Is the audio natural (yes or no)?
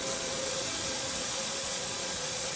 no